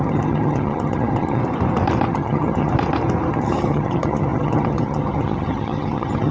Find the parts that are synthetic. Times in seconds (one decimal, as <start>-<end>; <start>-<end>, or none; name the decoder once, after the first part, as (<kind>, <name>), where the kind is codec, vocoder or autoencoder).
0.0-1.4 (vocoder, HiFi-GAN); 2.1-2.7; 3.3-6.3